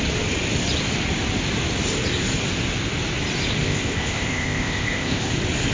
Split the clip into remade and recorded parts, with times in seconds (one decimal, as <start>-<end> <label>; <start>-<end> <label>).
0.0-3.6 recorded; 3.6-5.3 remade; 5.3-5.7 recorded